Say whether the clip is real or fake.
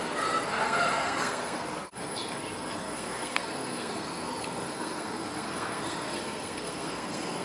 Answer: fake